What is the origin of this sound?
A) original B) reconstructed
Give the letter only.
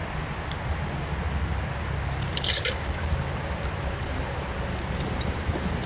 A